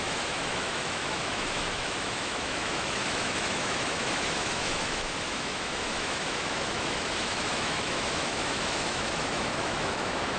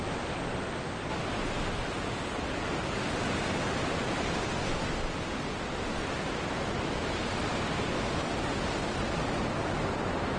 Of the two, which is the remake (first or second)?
first